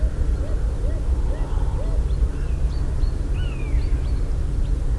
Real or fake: real